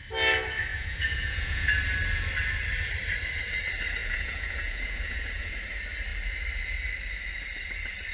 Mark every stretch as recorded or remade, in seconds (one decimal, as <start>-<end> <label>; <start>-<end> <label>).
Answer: 0.0-0.7 recorded; 0.7-1.7 remade; 1.7-4.0 recorded; 4.0-5.5 remade; 5.5-8.1 recorded